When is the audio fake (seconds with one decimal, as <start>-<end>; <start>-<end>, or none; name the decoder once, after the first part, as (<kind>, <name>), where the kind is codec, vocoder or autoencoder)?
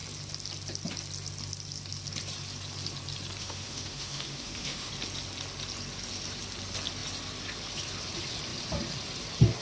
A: 3.4-4.9 (autoencoder, DAC-VAE)